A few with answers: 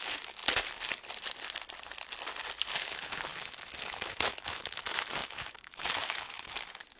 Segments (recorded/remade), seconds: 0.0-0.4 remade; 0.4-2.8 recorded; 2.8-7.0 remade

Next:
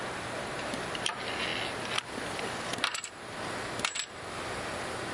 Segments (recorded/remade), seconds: 0.0-5.1 recorded